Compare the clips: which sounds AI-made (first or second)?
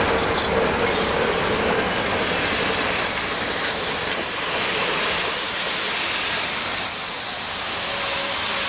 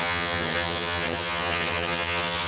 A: second